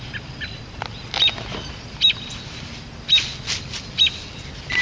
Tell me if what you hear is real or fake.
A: real